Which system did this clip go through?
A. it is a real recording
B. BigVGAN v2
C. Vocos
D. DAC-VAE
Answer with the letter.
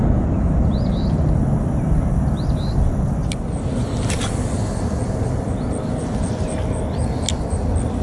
A